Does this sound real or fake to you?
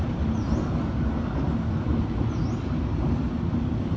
real